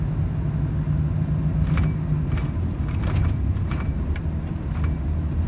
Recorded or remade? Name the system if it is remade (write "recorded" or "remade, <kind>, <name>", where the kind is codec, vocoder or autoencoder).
recorded